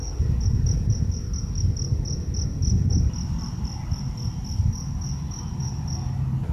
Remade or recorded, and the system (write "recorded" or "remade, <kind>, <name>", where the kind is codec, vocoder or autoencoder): recorded